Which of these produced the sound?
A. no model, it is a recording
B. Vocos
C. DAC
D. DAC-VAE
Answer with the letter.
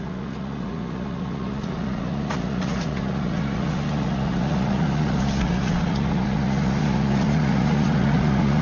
B